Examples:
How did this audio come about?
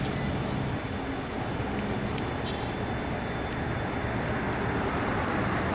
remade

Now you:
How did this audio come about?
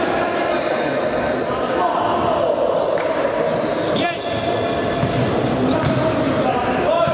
recorded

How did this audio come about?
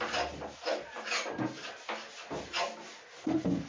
recorded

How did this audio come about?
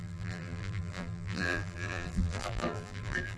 remade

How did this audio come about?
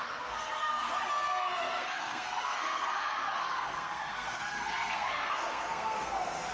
remade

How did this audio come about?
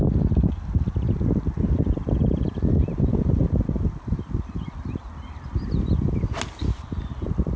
recorded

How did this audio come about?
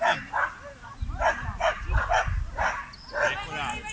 recorded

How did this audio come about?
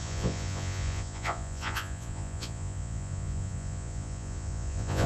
remade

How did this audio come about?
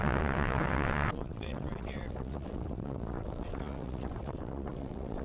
remade